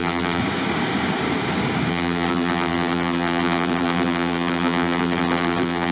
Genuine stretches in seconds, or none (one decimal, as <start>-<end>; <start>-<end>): 0.4-1.9